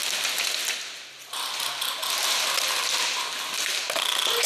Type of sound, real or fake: real